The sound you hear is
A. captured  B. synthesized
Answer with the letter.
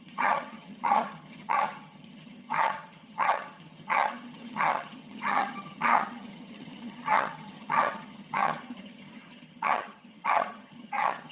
B